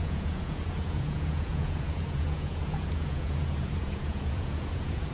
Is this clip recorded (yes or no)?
no